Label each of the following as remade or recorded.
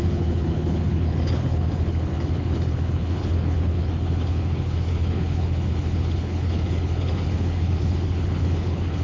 remade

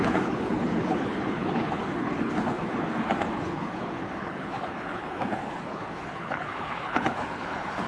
remade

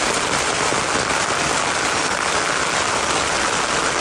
recorded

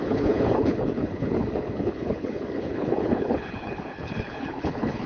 remade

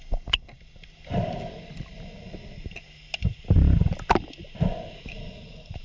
recorded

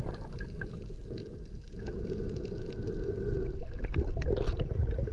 recorded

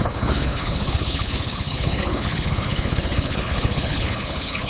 remade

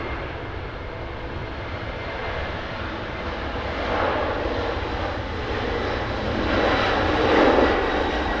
recorded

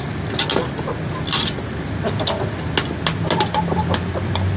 recorded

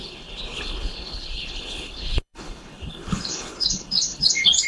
remade